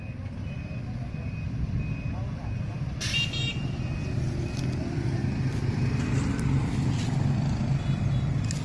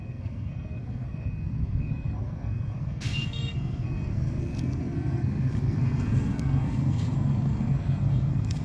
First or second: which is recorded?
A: first